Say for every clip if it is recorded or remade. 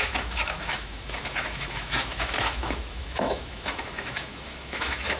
remade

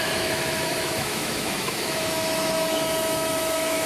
remade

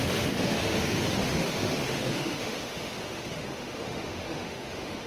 remade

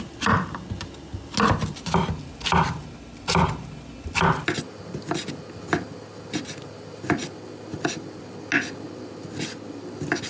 recorded